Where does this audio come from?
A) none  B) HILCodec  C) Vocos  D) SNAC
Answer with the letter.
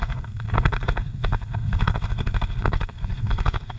D